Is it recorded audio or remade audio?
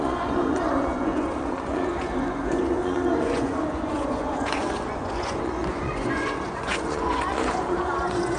remade